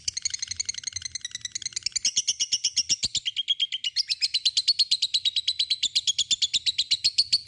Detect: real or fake real